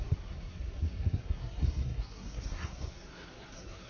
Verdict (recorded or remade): remade